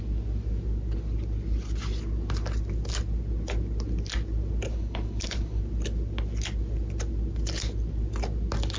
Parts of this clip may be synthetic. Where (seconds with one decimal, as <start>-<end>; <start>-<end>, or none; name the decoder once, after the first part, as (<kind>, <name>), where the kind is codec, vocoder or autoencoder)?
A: 4.7-5.6 (codec, HILCodec)